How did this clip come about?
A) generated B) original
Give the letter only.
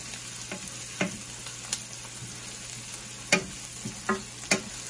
B